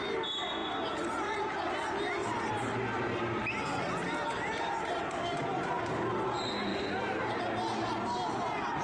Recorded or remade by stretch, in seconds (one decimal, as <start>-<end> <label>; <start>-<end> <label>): 0.0-2.2 recorded; 2.2-5.8 remade; 5.8-6.7 recorded; 6.7-7.4 remade; 7.4-8.8 recorded